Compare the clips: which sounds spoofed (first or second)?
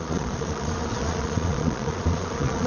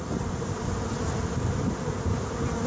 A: first